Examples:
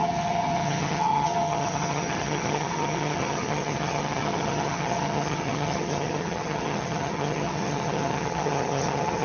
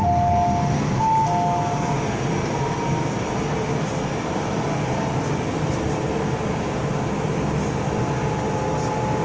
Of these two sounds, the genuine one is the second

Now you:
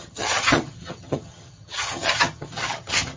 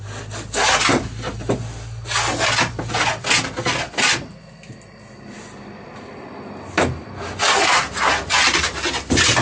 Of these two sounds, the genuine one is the second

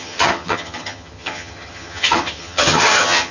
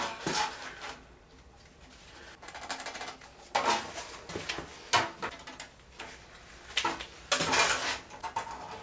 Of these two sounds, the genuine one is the second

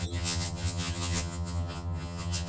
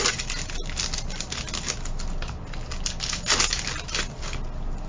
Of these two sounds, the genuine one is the second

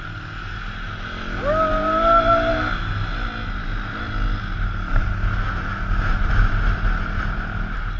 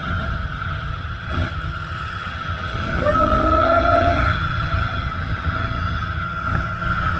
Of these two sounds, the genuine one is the first